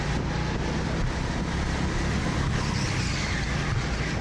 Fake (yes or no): no